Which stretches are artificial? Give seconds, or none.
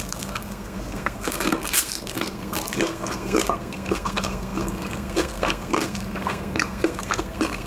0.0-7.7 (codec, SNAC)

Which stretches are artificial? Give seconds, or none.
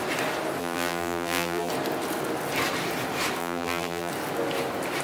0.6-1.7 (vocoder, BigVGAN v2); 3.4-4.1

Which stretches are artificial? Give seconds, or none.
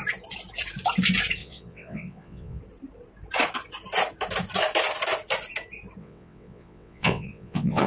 1.4-2.6 (vocoder, WaveNeXt); 6.0-7.9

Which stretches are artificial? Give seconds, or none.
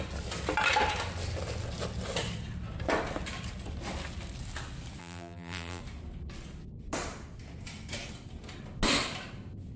5.0-5.8 (vocoder, BigVGAN v2)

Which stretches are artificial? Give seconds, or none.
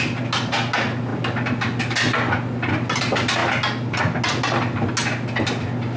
none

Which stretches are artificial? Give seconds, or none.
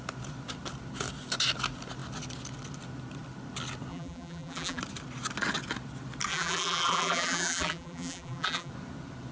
3.9-4.8 (vocoder, BigVGAN v2); 6.3-8.7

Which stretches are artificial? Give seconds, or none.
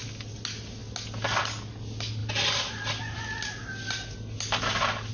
none